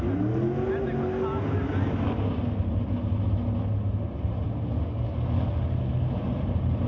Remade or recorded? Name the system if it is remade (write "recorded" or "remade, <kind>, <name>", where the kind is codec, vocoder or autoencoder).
recorded